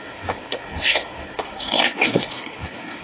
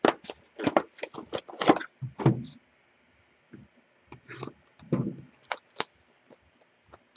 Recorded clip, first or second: second